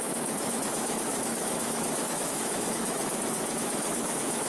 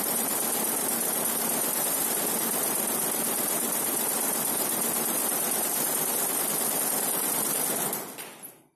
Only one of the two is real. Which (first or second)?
second